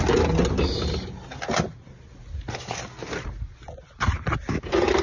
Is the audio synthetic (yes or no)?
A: no